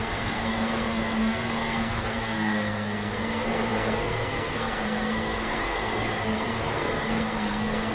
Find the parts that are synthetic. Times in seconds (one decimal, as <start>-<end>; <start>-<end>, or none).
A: 0.0-7.9